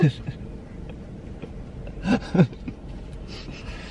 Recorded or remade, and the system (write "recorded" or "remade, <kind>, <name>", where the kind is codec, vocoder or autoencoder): recorded